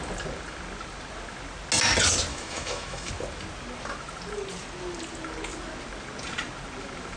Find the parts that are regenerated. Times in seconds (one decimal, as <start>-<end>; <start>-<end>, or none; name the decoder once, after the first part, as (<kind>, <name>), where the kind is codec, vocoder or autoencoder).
2.3-3.1 (autoencoder, DAC-VAE)